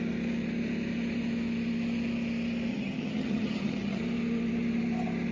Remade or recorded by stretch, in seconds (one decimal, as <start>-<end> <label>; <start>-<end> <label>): 0.0-2.7 recorded; 2.7-4.0 remade; 4.0-5.3 recorded